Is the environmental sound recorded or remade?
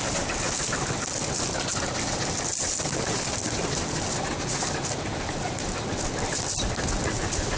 recorded